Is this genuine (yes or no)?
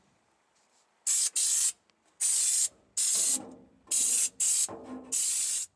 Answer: yes